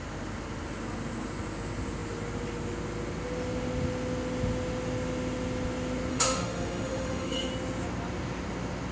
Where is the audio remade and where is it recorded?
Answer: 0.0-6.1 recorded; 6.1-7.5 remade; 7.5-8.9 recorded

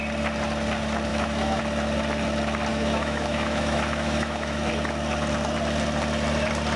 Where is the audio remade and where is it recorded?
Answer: 0.0-1.1 recorded; 1.1-1.6 remade; 1.6-2.7 recorded; 2.7-4.7 remade; 4.7-6.8 recorded

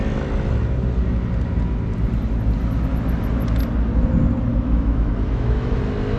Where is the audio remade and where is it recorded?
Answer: 0.0-4.5 recorded; 4.5-5.8 remade; 5.8-6.2 recorded

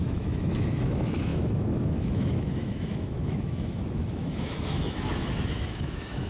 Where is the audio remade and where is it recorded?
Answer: 0.0-6.3 remade

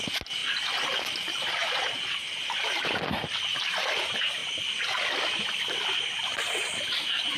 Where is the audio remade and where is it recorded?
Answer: 0.0-7.4 recorded

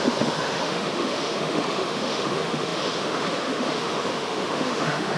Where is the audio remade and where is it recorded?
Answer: 0.0-5.2 remade